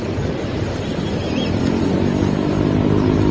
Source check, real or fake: real